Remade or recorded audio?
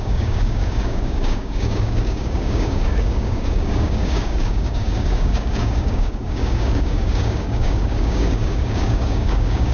remade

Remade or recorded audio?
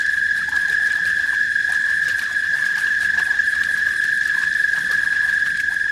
recorded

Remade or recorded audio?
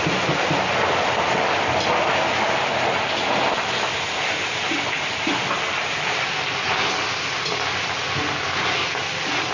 recorded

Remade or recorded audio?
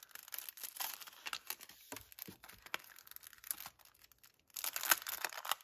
recorded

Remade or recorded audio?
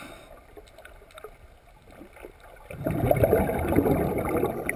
recorded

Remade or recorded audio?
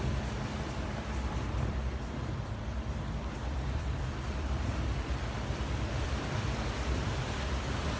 remade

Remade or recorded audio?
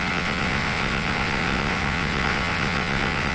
remade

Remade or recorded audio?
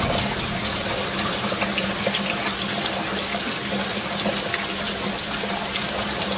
recorded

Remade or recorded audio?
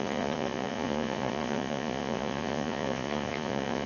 remade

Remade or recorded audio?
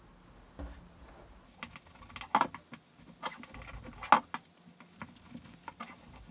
recorded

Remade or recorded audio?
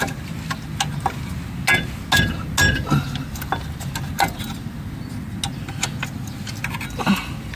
recorded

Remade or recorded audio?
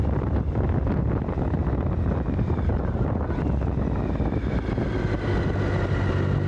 recorded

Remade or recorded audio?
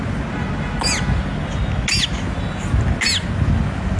recorded